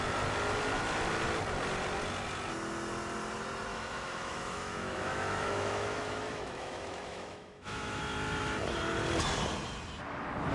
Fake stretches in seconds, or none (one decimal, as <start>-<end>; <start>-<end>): 3.7-8.0

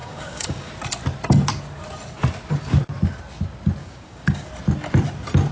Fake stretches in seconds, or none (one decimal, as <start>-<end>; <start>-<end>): 0.0-0.7; 3.8-4.5

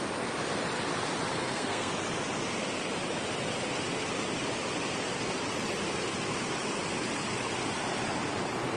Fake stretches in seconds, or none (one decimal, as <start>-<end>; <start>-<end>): 1.3-1.9